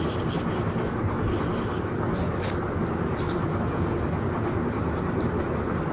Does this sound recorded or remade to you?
recorded